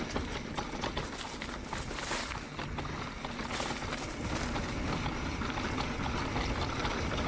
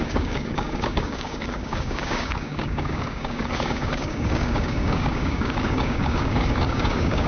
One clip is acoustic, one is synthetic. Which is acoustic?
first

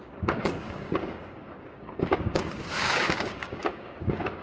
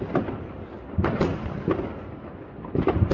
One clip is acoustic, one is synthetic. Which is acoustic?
second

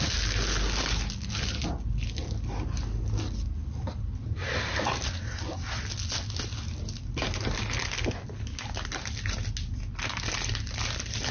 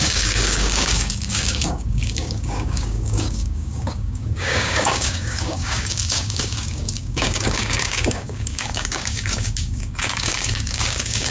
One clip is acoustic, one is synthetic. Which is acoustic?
first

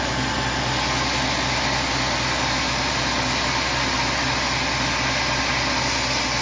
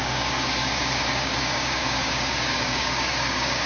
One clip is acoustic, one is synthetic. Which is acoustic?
first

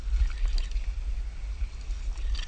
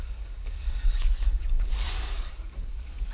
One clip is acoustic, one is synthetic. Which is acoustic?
first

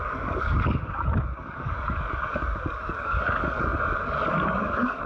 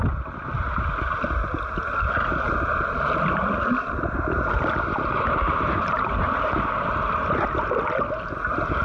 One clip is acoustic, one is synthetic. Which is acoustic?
second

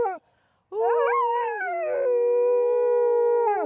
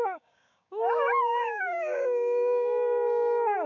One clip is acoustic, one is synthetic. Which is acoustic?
first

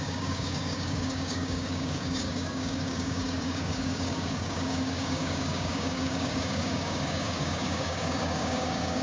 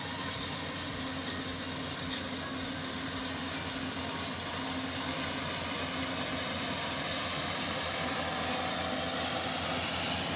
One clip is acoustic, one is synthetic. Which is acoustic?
second